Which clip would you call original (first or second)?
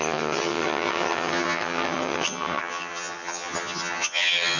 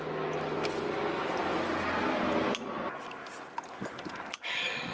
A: second